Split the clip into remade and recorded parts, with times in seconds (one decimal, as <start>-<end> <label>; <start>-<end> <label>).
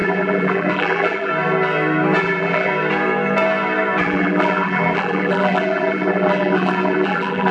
0.0-1.3 remade; 1.3-2.2 recorded; 2.2-2.7 remade; 2.7-4.0 recorded; 4.0-7.5 remade